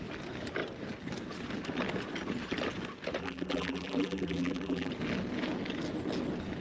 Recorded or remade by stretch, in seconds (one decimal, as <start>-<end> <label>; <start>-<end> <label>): 0.0-3.2 recorded; 3.2-4.9 remade; 4.9-6.6 recorded